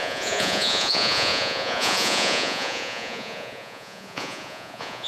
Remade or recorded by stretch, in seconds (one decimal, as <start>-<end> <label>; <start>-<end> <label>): 0.0-5.1 remade